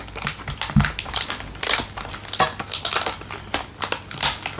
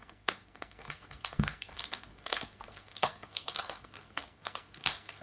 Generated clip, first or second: second